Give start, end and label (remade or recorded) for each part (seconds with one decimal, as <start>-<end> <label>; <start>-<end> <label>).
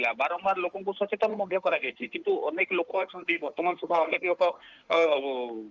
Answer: 0.0-1.3 recorded; 1.3-2.2 remade; 2.2-2.9 recorded; 2.9-5.2 remade; 5.2-5.7 recorded